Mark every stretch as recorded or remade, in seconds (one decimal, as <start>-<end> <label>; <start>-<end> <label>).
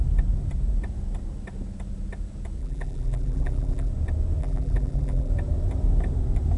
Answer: 0.0-2.6 recorded; 2.6-3.9 remade; 3.9-4.4 recorded; 4.4-5.3 remade; 5.3-6.6 recorded